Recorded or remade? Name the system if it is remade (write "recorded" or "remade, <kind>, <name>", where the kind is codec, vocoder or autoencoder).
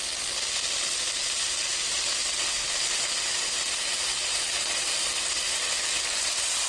recorded